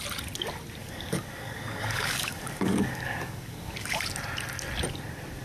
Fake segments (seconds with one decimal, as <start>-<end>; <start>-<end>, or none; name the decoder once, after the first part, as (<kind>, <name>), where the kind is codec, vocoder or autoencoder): 0.8-4.0 (codec, DAC)

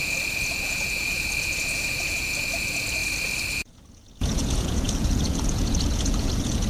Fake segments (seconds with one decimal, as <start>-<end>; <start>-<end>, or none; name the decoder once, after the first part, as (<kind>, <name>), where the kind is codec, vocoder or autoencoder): 0.0-3.0 (vocoder, Vocos); 3.5-6.7